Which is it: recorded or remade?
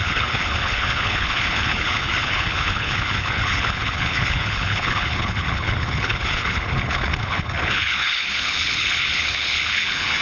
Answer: remade